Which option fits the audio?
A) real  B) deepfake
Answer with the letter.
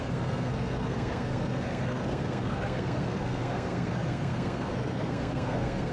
B